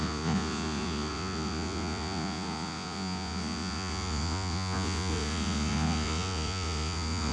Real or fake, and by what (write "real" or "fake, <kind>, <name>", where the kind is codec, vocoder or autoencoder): fake, vocoder, Vocos